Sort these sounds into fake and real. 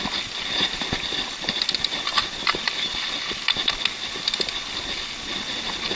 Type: real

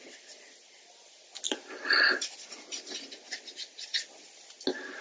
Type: real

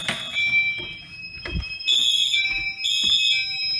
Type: real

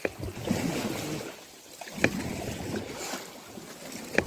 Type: real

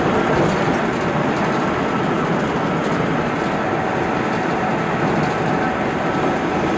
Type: real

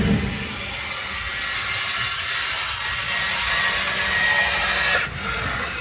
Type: real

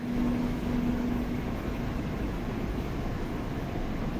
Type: fake